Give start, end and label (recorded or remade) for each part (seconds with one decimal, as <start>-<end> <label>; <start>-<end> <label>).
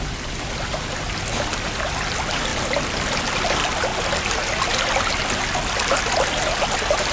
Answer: 0.0-7.1 recorded